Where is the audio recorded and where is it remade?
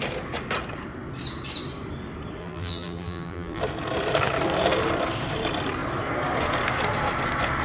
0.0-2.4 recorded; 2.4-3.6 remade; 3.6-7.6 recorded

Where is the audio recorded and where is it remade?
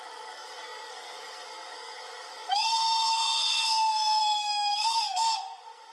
0.0-5.9 remade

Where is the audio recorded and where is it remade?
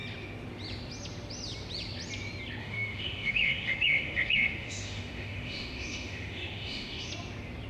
0.0-2.6 recorded; 2.6-7.1 remade; 7.1-7.7 recorded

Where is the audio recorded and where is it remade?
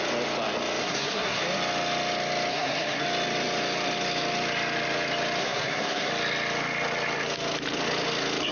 0.0-0.8 recorded; 0.8-1.4 remade; 1.4-2.5 recorded; 2.5-3.0 remade; 3.0-5.4 recorded; 5.4-6.1 remade; 6.1-8.5 recorded